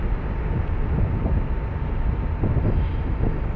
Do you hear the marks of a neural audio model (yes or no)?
no